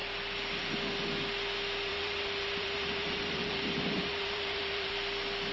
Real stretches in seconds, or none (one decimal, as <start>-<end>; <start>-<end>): 0.0-1.9; 4.9-5.5